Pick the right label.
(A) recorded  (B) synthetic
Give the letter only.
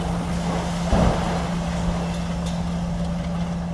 A